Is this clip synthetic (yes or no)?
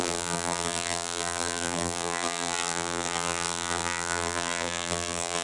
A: yes